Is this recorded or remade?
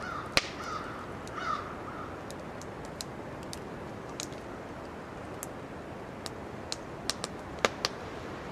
recorded